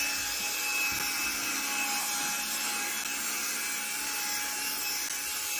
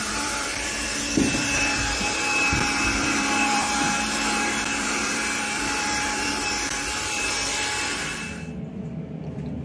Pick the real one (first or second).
first